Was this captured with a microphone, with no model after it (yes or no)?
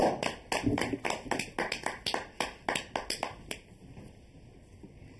yes